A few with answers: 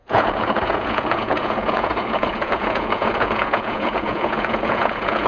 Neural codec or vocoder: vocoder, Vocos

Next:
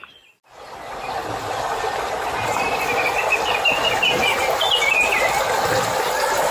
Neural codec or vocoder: none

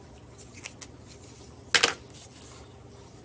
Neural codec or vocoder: none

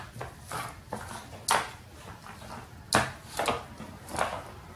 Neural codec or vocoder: none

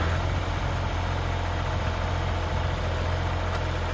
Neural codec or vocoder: none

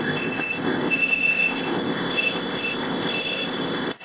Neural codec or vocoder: codec, ZipCodec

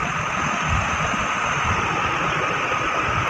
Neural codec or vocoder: vocoder, BigVGAN v2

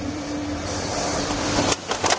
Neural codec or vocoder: vocoder, BigVGAN v2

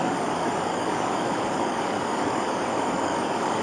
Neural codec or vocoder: codec, DAC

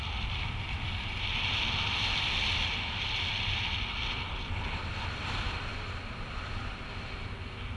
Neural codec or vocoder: none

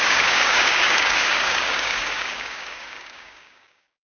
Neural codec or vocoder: codec, DAC